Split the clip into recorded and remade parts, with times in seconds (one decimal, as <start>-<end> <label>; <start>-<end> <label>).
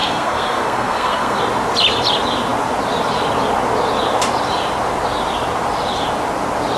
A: 0.0-1.4 remade; 1.4-6.8 recorded